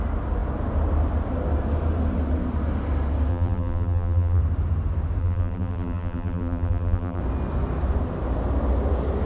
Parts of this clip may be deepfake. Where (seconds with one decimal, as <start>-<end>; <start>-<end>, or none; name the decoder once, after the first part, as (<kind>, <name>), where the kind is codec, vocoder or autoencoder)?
3.3-4.4 (vocoder, BigVGAN v2); 5.2-7.2